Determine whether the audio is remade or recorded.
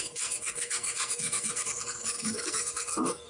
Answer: remade